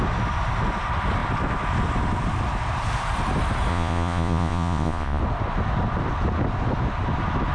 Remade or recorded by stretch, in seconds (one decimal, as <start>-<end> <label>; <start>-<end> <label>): 0.0-3.7 recorded; 3.7-5.2 remade; 5.2-7.5 recorded